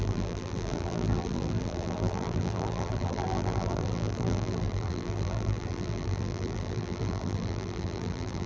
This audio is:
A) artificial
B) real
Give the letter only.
A